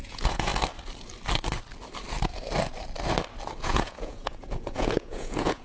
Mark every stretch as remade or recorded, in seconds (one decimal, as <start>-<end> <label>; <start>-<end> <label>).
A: 0.0-0.5 remade; 0.5-3.6 recorded; 3.6-5.6 remade